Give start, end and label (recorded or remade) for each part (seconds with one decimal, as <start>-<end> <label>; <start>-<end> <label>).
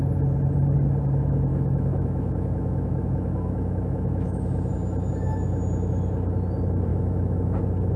0.0-1.5 recorded; 1.5-4.7 remade; 4.7-6.9 recorded; 6.9-7.6 remade; 7.6-8.0 recorded